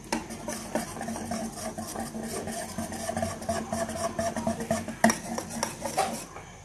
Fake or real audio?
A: real